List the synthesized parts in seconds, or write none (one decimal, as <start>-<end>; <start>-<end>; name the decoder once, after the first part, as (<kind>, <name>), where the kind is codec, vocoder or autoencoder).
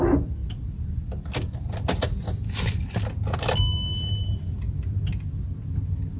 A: none